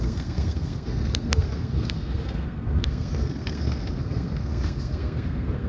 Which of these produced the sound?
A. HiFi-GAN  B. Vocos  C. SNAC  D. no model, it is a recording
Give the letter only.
C